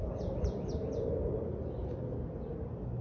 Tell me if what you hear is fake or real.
real